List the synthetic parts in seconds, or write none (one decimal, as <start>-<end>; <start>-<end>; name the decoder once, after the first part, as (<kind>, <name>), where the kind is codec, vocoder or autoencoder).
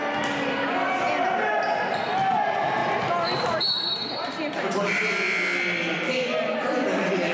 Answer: none